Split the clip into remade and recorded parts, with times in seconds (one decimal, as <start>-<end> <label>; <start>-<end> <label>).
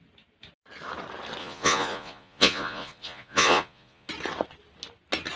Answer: 0.0-1.4 recorded; 1.4-4.1 remade; 4.1-5.4 recorded